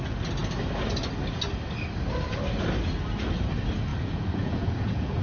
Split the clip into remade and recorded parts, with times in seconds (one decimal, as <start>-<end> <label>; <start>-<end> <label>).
0.0-3.9 recorded; 3.9-5.2 remade